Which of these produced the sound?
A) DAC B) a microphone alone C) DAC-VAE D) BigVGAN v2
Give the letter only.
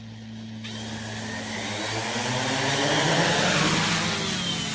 B